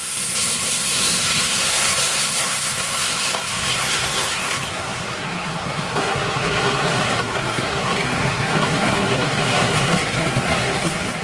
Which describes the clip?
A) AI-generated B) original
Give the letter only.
A